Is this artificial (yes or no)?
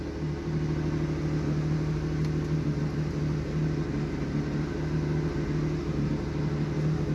no